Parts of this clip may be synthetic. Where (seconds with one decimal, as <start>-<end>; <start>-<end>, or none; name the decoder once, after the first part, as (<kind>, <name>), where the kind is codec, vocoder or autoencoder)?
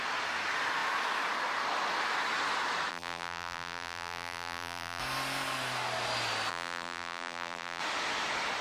2.9-5.0 (vocoder, BigVGAN v2); 6.5-7.8